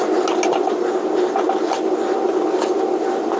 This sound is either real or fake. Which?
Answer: real